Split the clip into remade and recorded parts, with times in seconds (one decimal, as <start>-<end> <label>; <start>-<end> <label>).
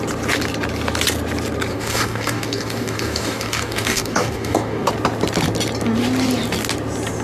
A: 0.0-1.7 recorded; 1.7-4.9 remade; 4.9-7.2 recorded